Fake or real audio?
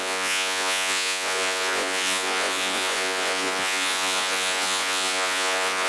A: fake